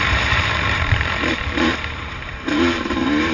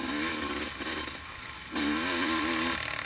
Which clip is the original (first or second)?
second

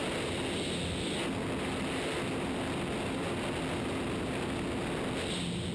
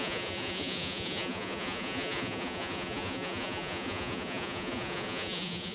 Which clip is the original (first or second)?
first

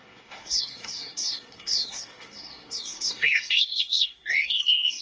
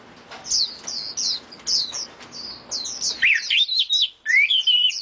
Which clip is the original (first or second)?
second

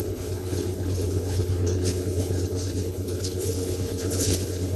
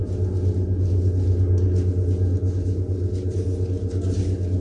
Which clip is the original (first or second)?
second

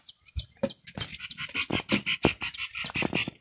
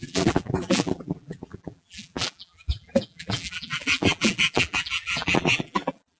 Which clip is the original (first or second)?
first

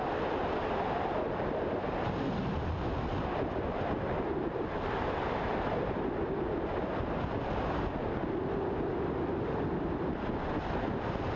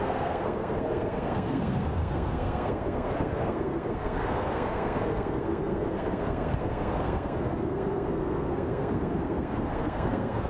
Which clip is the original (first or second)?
first